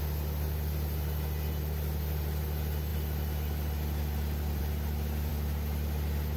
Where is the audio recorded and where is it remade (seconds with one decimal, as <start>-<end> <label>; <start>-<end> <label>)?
0.0-6.4 recorded